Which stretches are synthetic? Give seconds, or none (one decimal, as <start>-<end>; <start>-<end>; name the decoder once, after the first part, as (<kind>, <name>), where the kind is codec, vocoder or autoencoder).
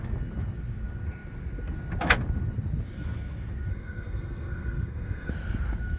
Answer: 3.7-5.3 (codec, SNAC)